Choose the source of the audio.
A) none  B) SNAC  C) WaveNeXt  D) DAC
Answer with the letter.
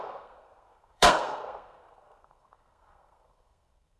B